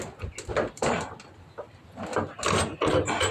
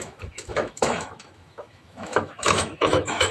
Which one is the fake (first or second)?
second